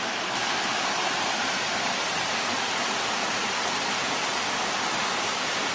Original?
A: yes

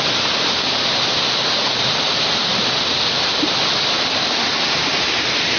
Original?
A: yes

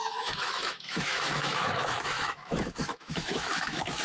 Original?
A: no